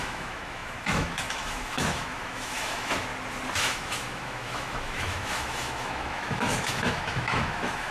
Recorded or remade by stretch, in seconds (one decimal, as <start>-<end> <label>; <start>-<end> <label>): 0.0-3.1 remade; 3.1-3.6 recorded; 3.6-7.9 remade